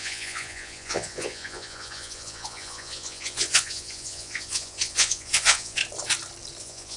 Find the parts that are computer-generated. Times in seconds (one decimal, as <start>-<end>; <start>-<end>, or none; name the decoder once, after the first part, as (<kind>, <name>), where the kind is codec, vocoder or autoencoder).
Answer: 0.0-5.8 (vocoder, Vocos); 6.6-7.0